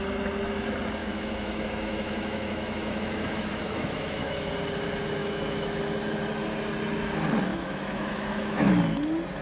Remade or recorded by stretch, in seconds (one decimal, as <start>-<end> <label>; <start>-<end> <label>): 0.0-1.0 recorded; 1.0-4.5 remade; 4.5-5.2 recorded; 5.2-5.8 remade; 5.8-7.5 recorded; 7.5-8.7 remade; 8.7-9.4 recorded